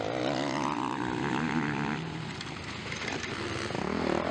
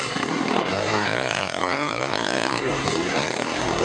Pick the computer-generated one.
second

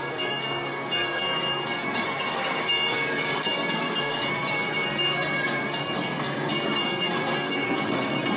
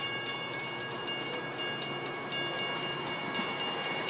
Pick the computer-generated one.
first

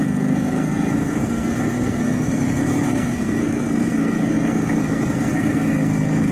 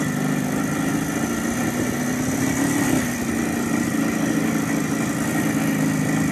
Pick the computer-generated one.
first